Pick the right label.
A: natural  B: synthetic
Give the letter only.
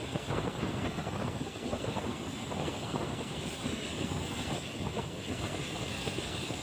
B